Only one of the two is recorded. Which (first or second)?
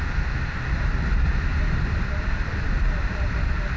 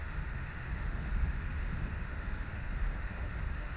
first